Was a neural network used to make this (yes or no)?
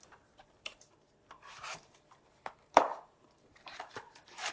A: yes